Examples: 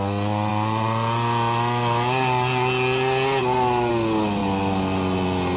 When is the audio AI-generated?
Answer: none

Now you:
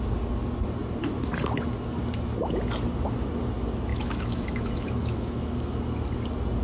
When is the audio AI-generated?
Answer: 3.9-5.9 (autoencoder, DAC-VAE)

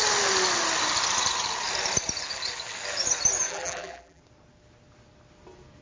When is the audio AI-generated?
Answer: 3.5-4.2 (vocoder, BigVGAN v2)

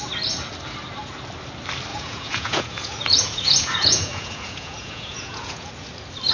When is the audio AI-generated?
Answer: 1.9-5.7 (vocoder, Vocos)

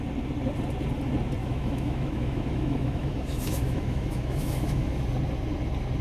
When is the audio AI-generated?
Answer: 1.4-5.0 (autoencoder, DAC-VAE)

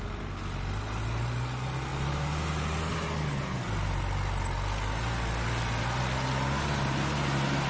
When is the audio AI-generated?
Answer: none

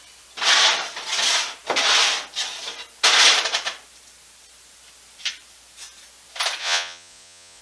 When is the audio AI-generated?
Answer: 6.6-7.6 (vocoder, Vocos)

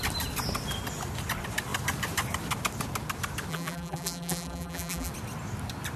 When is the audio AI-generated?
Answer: 3.5-5.1 (vocoder, BigVGAN v2)